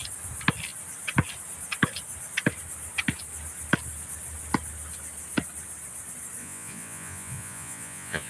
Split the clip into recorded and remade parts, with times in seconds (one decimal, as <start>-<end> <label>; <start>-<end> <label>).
0.0-6.4 recorded; 6.4-8.3 remade